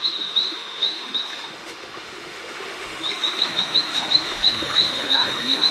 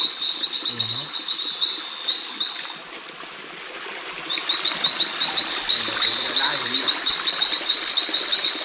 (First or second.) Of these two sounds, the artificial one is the first